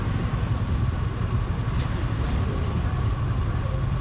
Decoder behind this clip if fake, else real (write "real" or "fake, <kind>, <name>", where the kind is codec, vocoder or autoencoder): real